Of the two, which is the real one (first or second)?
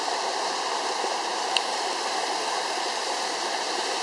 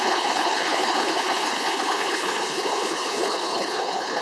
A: first